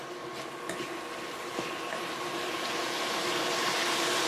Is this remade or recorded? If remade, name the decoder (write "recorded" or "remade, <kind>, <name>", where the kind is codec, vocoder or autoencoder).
recorded